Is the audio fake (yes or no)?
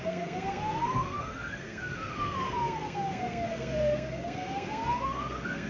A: yes